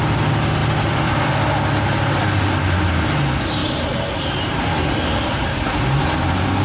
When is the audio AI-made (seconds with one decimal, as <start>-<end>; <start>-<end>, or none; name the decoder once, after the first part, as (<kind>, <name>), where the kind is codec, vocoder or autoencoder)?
0.6-1.3 (vocoder, BigVGAN v2); 3.6-4.2